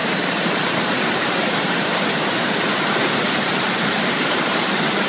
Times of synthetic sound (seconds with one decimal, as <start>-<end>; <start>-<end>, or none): 1.2-5.1